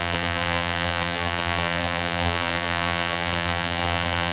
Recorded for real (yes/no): no